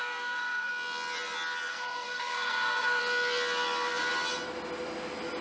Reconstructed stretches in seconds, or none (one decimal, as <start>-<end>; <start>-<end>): 0.0-0.7; 1.7-3.0